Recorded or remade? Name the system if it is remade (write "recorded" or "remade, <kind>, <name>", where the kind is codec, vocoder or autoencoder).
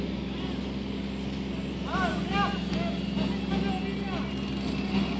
recorded